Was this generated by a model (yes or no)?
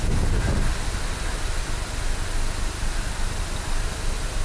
no